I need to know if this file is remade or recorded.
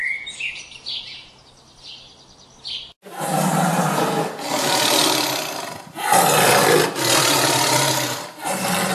recorded